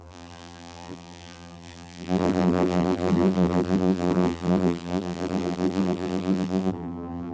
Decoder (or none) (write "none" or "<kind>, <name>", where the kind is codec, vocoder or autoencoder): vocoder, BigVGAN v2